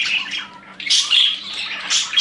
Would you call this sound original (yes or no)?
no